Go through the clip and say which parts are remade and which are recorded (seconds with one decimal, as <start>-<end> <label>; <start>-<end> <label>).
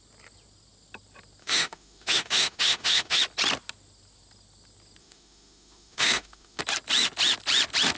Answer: 0.0-1.4 recorded; 1.4-3.2 remade; 3.2-5.0 recorded; 5.0-6.6 remade; 6.6-8.0 recorded